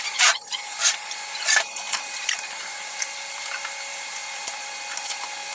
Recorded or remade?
remade